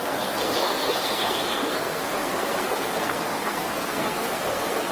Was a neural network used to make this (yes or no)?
yes